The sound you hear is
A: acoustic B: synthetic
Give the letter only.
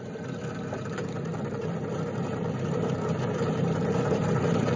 B